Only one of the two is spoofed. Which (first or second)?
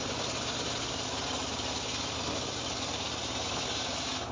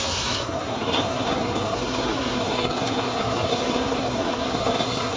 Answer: second